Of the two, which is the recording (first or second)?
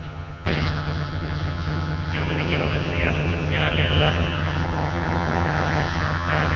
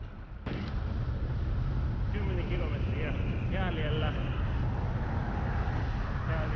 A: second